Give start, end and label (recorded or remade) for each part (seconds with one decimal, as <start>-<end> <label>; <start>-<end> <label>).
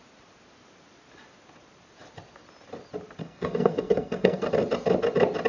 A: 0.0-3.2 recorded; 3.2-4.5 remade; 4.5-5.5 recorded